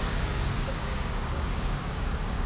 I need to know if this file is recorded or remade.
remade